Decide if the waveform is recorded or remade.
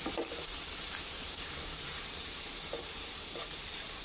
remade